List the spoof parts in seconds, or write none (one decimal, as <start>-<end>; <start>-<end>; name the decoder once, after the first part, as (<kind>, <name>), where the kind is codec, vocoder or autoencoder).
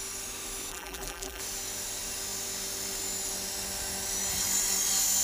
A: 0.7-1.4 (vocoder, BigVGAN v2)